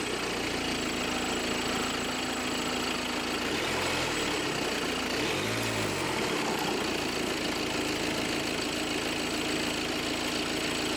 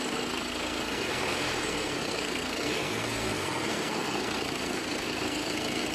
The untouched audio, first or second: first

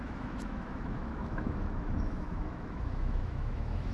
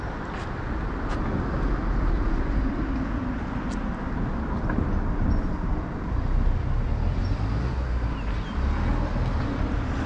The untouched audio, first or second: second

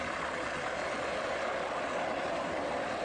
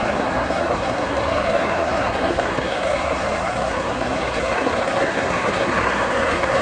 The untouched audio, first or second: first